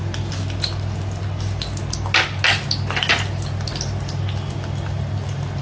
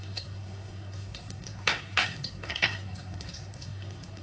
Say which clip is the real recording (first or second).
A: first